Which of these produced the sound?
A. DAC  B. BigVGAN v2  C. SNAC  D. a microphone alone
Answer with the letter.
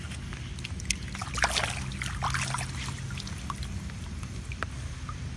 D